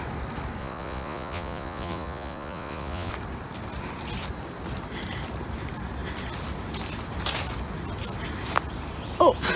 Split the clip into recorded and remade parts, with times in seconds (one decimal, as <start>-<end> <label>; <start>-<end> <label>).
0.0-0.6 recorded; 0.6-3.1 remade; 3.1-9.6 recorded